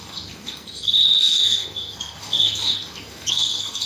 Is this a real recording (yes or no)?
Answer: no